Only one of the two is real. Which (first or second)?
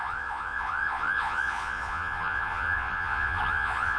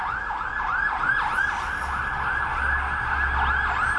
second